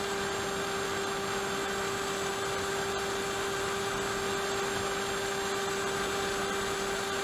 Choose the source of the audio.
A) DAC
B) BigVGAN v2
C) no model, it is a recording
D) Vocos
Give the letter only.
C